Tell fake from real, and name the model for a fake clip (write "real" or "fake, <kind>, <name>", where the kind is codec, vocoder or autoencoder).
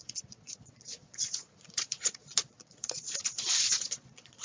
fake, vocoder, Vocos